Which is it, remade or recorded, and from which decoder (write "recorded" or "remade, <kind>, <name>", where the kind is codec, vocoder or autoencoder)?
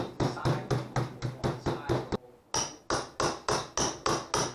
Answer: recorded